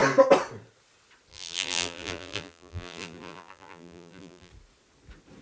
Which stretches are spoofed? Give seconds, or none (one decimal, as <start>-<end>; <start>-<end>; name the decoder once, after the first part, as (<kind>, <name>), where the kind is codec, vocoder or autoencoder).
1.3-4.5 (vocoder, BigVGAN v2)